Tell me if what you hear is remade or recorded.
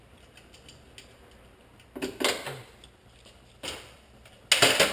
recorded